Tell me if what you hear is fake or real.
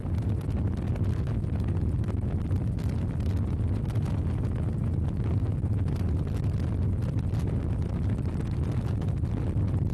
real